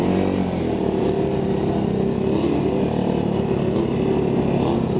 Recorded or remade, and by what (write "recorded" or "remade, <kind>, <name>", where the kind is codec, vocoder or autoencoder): recorded